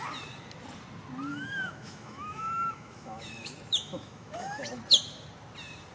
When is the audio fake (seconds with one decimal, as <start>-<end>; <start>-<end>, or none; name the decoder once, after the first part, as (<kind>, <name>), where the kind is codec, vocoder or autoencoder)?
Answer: 1.3-4.8 (autoencoder, DAC-VAE)